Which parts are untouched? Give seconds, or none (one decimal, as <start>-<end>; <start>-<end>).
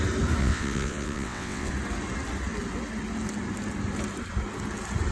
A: 0.0-0.4; 1.7-5.1